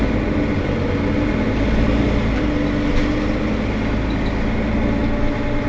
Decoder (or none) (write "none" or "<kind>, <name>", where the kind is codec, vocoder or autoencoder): none